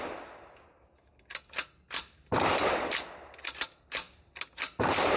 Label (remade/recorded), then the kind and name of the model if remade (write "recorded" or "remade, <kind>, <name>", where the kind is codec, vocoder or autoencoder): recorded